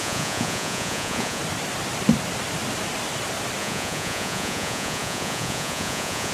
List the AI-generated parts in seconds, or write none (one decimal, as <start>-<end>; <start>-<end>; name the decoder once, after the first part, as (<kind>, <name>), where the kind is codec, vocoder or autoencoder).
0.0-1.4 (vocoder, Vocos); 3.6-6.3